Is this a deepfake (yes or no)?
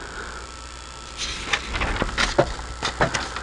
no